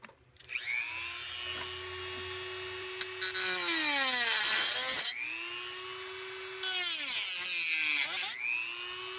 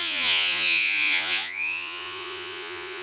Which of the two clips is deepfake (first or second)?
second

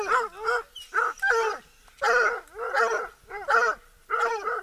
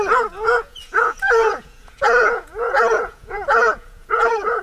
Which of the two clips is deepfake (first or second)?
second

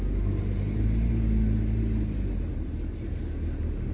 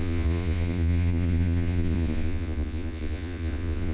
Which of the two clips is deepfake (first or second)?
second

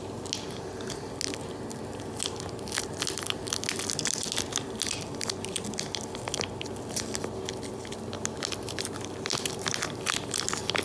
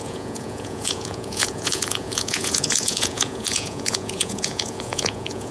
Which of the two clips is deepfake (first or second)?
second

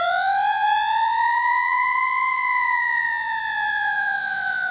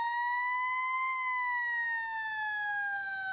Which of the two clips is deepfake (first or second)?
first